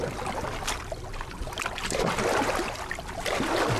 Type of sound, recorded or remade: recorded